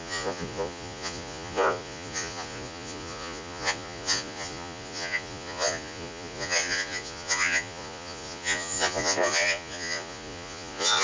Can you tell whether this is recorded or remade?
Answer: remade